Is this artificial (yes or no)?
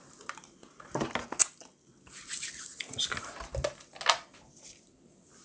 no